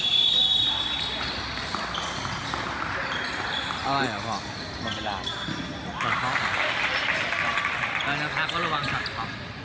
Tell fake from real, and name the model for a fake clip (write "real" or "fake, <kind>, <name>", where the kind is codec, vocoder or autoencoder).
real